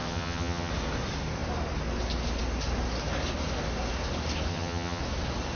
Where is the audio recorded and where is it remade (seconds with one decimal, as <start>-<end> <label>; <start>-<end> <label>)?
0.0-0.7 remade; 0.7-4.5 recorded; 4.5-5.0 remade; 5.0-5.6 recorded